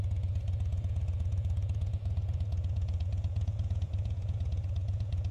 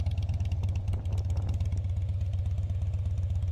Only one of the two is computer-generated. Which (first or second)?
first